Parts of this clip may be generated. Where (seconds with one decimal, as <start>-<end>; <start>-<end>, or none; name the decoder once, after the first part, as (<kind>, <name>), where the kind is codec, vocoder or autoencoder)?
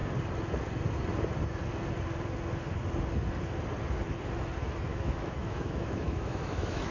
4.9-6.9 (autoencoder, DAC-VAE)